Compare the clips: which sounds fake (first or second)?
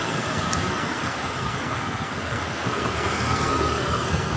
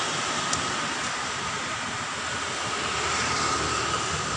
first